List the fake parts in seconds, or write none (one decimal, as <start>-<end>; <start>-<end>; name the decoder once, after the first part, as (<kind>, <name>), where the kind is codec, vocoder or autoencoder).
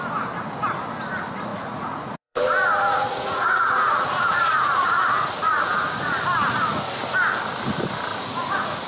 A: 1.5-6.2 (vocoder, Vocos); 8.1-8.9